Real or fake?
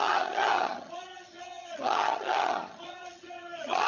fake